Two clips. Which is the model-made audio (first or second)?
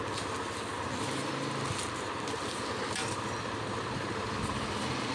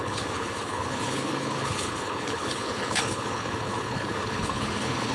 second